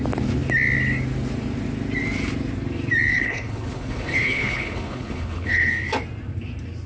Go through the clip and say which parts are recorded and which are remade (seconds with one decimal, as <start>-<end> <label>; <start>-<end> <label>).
0.0-3.1 recorded; 3.1-5.7 remade; 5.7-6.9 recorded